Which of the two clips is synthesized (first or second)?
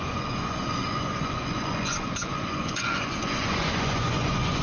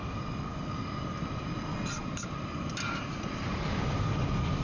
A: first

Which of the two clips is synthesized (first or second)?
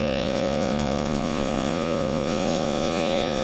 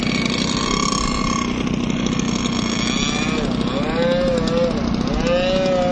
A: first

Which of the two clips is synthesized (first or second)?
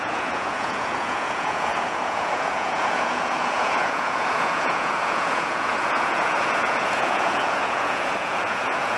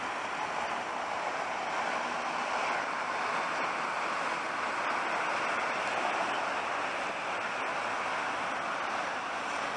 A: first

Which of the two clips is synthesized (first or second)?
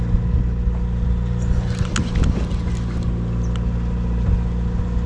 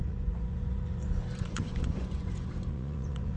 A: second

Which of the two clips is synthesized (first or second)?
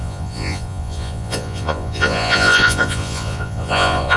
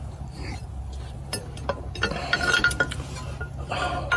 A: first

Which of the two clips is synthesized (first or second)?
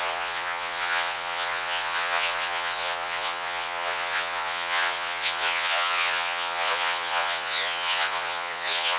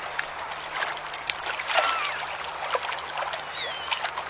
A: first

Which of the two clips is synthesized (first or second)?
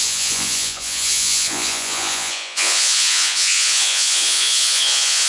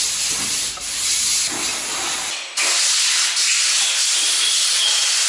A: first